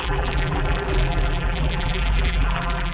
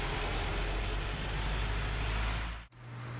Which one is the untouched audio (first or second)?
second